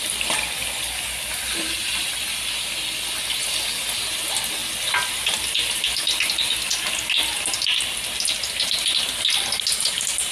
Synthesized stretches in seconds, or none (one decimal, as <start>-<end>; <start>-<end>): none